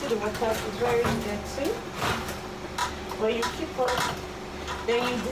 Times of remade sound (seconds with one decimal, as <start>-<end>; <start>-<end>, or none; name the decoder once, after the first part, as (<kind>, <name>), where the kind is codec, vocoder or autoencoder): 2.8-4.0 (vocoder, BigVGAN v2)